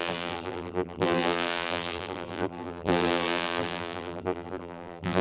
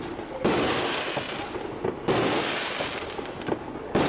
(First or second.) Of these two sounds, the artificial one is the first